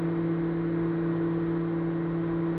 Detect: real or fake real